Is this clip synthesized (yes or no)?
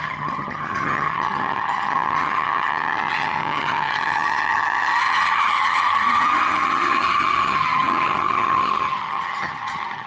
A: yes